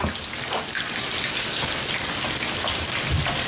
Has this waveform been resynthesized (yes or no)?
no